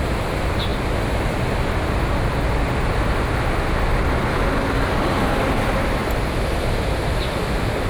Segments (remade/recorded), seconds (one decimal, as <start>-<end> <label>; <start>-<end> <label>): 0.0-7.9 recorded